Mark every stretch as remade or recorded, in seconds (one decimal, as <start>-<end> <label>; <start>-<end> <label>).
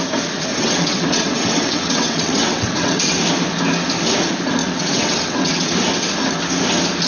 0.0-0.5 recorded; 0.5-3.2 remade; 3.2-4.6 recorded; 4.6-5.7 remade; 5.7-7.1 recorded